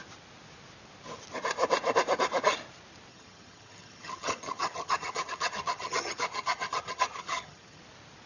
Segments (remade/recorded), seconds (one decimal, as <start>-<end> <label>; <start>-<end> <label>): 0.0-3.1 recorded; 3.1-7.8 remade; 7.8-8.3 recorded